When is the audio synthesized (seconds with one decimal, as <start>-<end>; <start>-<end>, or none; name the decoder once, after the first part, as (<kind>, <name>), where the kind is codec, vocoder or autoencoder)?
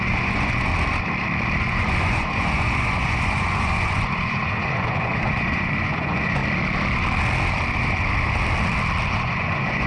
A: 0.0-0.7 (vocoder, Vocos); 1.6-6.4; 9.1-9.9